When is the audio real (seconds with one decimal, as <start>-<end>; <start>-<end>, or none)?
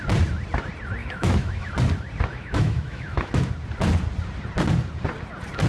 0.0-1.0; 1.7-2.3; 3.5-5.7